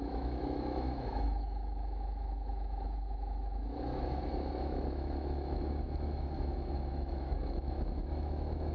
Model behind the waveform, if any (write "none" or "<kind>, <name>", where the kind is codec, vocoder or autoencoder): autoencoder, DAC-VAE